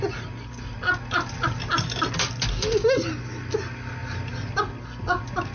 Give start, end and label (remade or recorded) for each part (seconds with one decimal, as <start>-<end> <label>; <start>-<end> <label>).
0.0-5.5 recorded

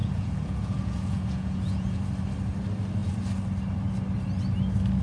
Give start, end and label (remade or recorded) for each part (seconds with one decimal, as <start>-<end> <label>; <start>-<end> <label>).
0.0-2.0 remade; 2.0-5.0 recorded

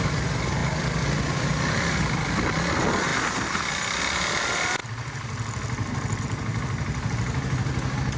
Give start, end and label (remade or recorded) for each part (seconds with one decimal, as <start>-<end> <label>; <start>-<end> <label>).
0.0-8.2 recorded